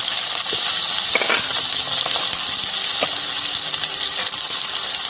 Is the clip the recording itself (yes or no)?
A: yes